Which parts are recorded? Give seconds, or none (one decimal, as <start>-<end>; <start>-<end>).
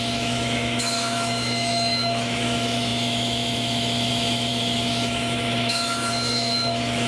none